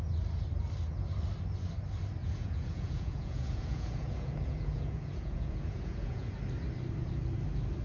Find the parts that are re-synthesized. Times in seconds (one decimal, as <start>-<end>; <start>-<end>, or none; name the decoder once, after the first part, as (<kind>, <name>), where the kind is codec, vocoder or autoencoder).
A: 2.2-6.3 (vocoder, Vocos)